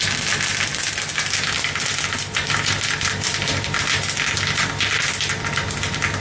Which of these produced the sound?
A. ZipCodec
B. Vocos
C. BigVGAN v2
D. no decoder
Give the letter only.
D